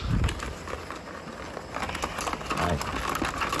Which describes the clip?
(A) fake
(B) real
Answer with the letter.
B